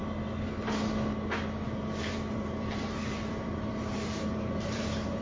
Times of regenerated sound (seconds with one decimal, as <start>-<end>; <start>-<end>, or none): 2.0-5.2